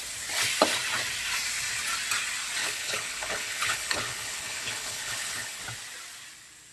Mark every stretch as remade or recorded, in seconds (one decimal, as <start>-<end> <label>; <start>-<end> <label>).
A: 0.0-2.6 recorded; 2.6-5.6 remade; 5.6-6.7 recorded